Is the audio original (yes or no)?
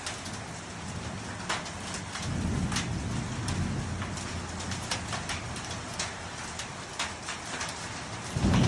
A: yes